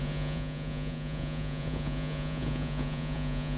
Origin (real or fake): fake